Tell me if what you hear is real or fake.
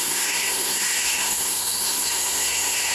fake